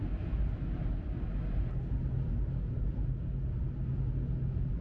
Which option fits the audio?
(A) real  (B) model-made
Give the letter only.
A